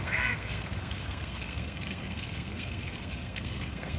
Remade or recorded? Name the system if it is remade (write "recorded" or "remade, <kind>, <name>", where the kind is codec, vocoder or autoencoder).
remade, codec, SNAC